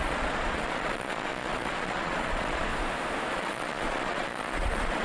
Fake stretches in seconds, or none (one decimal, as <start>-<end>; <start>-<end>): 0.0-2.7; 3.3-5.0